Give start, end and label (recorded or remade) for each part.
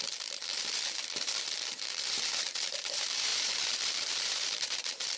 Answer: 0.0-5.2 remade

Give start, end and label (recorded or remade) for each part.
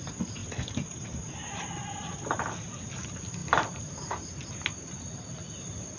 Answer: 0.0-0.4 recorded; 0.4-2.4 remade; 2.4-3.4 recorded; 3.4-4.5 remade; 4.5-6.0 recorded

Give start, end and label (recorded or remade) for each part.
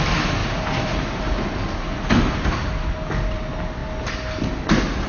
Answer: 0.0-0.4 recorded; 0.4-1.2 remade; 1.2-5.1 recorded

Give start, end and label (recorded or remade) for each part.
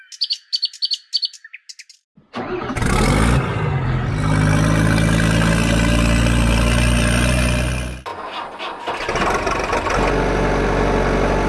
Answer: 0.0-11.5 recorded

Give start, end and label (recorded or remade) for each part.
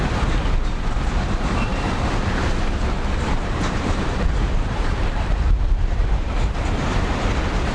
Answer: 0.0-1.7 recorded; 1.7-6.3 remade; 6.3-7.7 recorded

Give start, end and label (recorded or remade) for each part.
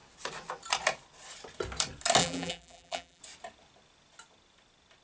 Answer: 0.0-2.2 recorded; 2.2-3.2 remade; 3.2-5.0 recorded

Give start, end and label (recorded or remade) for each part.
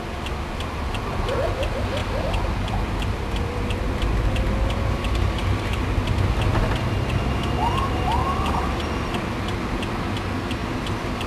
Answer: 0.0-2.0 recorded; 2.0-4.0 remade; 4.0-11.3 recorded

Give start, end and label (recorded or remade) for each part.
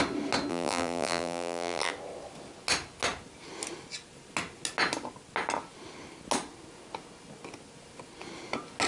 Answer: 0.0-0.5 recorded; 0.5-1.9 remade; 1.9-8.9 recorded